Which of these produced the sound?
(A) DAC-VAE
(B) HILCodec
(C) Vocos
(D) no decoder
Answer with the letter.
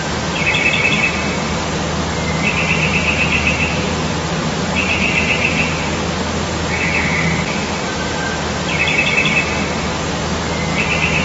D